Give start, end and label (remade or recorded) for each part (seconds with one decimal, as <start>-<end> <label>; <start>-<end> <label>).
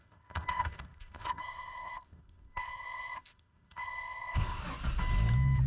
0.0-4.6 remade; 4.6-5.7 recorded